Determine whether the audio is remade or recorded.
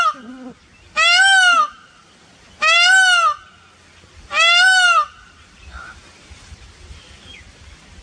recorded